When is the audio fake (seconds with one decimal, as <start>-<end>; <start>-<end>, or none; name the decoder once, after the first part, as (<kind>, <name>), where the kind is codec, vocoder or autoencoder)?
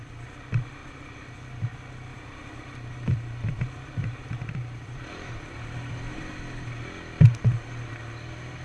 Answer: 0.8-1.6 (vocoder, BigVGAN v2); 2.1-6.3